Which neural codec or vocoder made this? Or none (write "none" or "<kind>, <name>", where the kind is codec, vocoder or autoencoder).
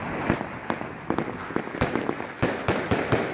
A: none